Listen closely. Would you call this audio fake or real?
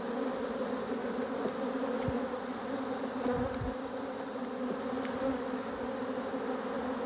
real